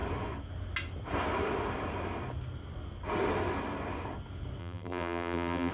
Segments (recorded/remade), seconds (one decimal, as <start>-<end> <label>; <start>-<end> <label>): 0.0-4.6 recorded; 4.6-5.7 remade